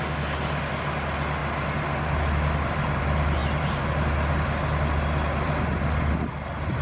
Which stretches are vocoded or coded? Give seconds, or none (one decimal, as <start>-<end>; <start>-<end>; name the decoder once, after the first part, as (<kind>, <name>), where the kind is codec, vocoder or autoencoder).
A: none